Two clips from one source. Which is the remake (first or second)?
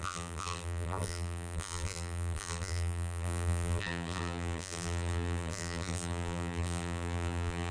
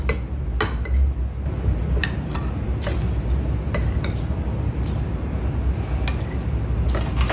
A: first